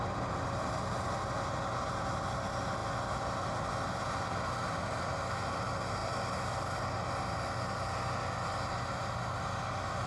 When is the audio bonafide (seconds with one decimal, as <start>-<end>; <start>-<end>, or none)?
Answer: 0.0-10.1